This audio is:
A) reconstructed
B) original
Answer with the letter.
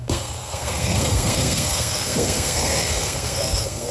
A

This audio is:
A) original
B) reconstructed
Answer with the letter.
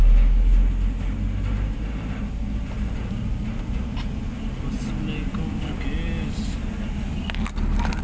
A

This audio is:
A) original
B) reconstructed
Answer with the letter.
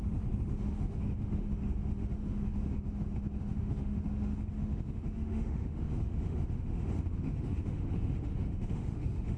B